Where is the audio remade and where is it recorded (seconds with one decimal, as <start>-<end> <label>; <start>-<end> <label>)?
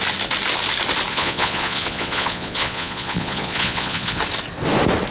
0.0-1.1 recorded; 1.1-4.2 remade; 4.2-5.1 recorded